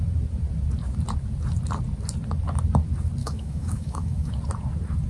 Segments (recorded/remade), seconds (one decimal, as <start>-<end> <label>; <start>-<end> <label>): 0.0-3.2 recorded; 3.2-4.3 remade; 4.3-5.1 recorded